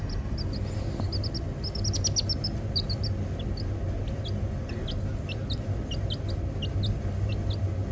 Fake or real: real